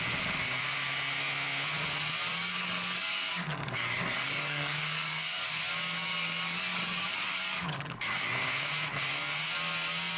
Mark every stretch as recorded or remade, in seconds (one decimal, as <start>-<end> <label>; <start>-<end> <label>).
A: 0.0-2.3 recorded; 2.3-5.5 remade; 5.5-6.1 recorded; 6.1-8.4 remade; 8.4-10.2 recorded